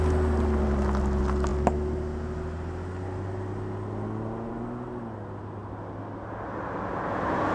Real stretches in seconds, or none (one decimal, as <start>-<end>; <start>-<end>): 0.0-7.5